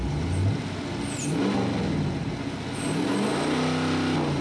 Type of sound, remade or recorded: recorded